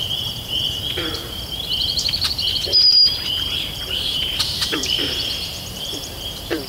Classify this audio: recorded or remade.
remade